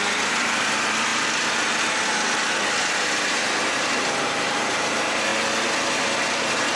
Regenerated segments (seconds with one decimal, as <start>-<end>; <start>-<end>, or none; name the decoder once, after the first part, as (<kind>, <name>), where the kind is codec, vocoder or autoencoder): 0.0-1.1 (vocoder, BigVGAN v2); 3.7-5.3; 6.0-6.8